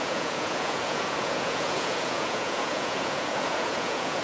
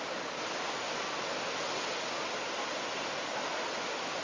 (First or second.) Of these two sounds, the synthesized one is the first